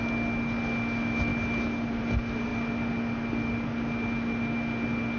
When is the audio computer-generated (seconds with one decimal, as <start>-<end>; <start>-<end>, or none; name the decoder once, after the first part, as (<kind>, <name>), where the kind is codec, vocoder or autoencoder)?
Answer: none